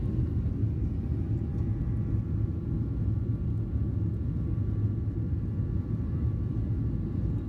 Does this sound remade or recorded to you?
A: recorded